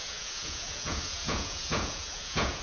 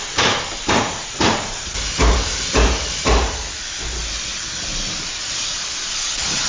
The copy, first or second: first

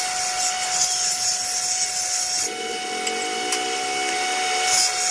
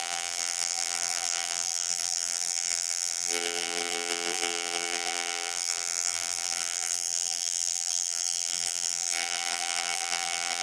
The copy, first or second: second